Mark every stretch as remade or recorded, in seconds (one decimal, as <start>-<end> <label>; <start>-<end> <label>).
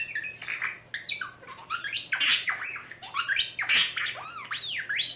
0.0-5.2 recorded